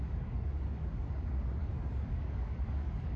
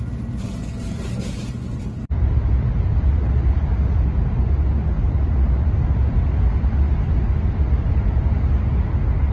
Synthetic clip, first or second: first